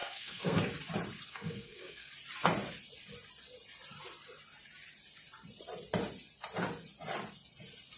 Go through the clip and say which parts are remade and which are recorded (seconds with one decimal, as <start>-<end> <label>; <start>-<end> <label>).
0.0-0.7 remade; 0.7-1.3 recorded; 1.3-2.1 remade; 2.1-8.0 recorded